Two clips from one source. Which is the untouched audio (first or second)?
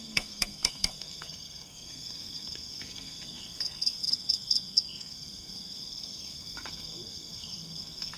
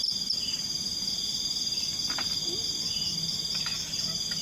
second